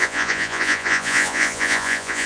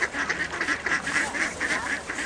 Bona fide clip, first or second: second